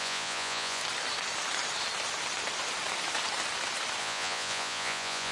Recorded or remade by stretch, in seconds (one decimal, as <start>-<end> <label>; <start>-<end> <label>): 0.0-0.8 remade; 0.8-4.0 recorded; 4.0-5.3 remade